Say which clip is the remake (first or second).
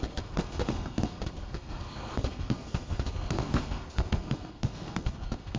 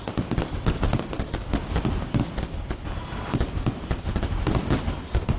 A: first